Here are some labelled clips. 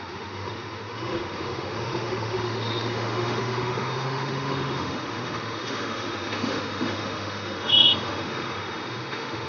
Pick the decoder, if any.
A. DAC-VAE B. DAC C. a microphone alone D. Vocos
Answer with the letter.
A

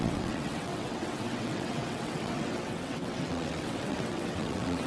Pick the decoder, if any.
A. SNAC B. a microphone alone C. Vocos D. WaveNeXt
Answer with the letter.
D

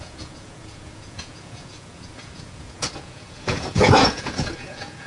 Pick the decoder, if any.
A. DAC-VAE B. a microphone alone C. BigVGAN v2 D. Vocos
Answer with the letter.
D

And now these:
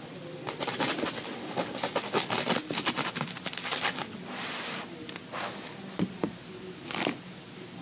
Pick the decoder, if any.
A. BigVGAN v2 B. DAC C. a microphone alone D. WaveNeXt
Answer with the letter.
C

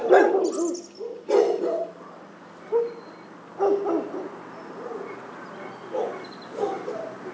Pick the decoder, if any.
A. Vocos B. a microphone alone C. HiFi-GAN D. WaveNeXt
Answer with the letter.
B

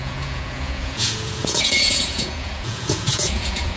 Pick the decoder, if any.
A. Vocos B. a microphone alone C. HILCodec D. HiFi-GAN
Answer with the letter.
A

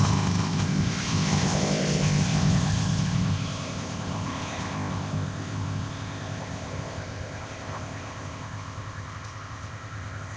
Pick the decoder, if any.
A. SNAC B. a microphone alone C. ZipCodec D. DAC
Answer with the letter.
C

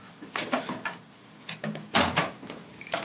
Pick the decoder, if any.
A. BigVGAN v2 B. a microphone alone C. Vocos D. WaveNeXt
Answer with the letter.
A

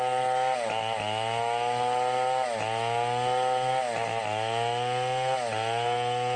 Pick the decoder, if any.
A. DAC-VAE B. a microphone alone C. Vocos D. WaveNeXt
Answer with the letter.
B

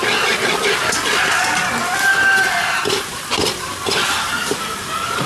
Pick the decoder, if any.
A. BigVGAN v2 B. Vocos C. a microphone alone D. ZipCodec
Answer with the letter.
C